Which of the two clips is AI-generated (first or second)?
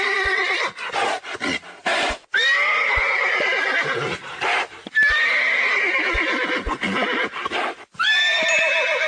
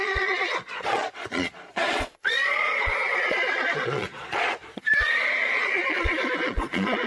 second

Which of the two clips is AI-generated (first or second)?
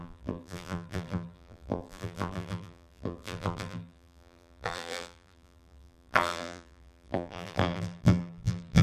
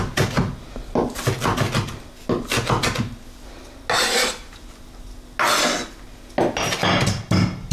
first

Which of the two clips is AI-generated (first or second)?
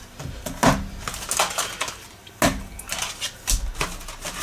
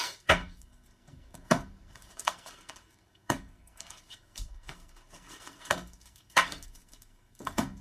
second